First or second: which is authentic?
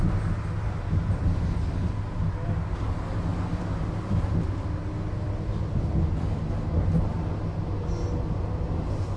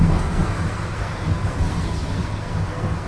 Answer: first